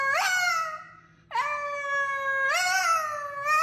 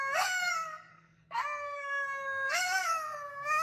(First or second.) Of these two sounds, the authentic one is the first